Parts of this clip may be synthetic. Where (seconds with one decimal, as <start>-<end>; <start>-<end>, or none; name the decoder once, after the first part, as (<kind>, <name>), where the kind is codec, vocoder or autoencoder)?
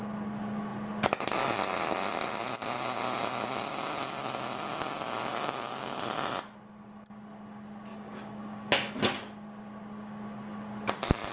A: 5.3-6.0 (codec, DAC); 7.9-9.0